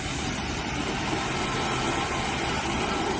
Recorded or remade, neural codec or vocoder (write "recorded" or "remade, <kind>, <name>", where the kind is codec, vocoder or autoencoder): remade, vocoder, BigVGAN v2